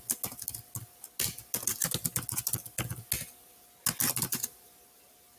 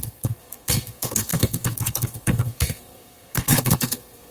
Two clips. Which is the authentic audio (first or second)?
first